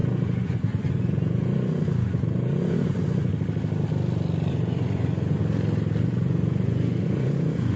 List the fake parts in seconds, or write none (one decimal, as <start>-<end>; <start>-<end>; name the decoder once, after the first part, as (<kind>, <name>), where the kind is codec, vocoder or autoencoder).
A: 0.0-3.3 (vocoder, Vocos); 4.5-5.4; 6.0-7.8